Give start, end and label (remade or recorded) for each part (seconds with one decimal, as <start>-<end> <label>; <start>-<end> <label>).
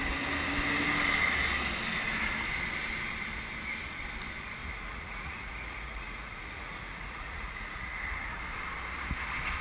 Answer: 0.0-4.6 recorded; 4.6-8.4 remade; 8.4-9.6 recorded